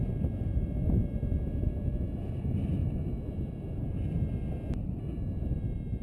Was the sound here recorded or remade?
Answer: recorded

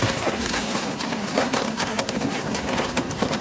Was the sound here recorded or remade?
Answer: remade